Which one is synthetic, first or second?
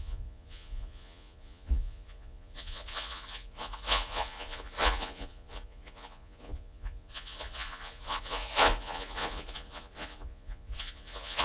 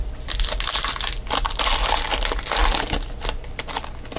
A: first